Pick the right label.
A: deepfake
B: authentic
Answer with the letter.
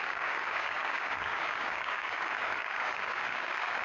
A